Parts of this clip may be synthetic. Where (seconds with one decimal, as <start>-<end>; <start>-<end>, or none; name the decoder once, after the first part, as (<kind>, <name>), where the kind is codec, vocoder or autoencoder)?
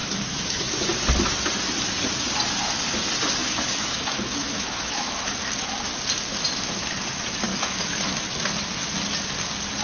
0.0-0.7 (autoencoder, DAC-VAE); 3.4-5.3; 7.5-8.0